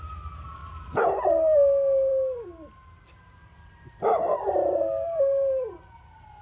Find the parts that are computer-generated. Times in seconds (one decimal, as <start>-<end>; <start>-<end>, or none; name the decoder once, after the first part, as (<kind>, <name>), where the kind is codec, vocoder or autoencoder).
none